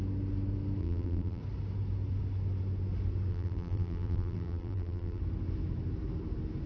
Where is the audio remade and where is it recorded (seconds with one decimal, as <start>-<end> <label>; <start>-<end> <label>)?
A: 0.0-0.8 recorded; 0.8-1.4 remade; 1.4-3.3 recorded; 3.3-5.2 remade; 5.2-6.7 recorded

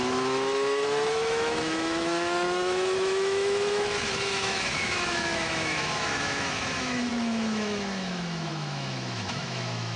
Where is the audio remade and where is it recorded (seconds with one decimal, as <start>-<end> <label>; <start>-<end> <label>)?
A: 0.0-10.0 remade

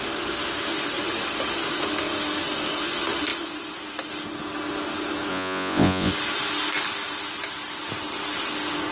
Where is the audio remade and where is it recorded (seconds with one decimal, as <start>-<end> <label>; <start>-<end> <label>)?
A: 0.0-5.3 recorded; 5.3-6.1 remade; 6.1-8.9 recorded

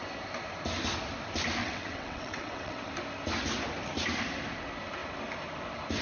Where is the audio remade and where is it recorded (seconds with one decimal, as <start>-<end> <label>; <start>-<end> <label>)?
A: 0.0-1.6 recorded; 1.6-2.9 remade; 2.9-6.0 recorded

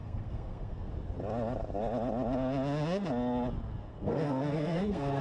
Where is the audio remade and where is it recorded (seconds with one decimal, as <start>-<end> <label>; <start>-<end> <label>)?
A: 0.0-0.9 remade; 0.9-3.9 recorded; 3.9-5.2 remade

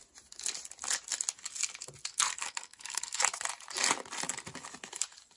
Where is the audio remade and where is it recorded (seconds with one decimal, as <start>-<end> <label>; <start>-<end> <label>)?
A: 0.0-2.1 recorded; 2.1-3.2 remade; 3.2-5.4 recorded